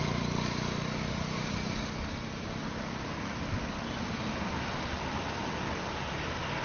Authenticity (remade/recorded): recorded